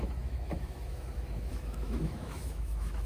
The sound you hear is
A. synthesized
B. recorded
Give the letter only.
A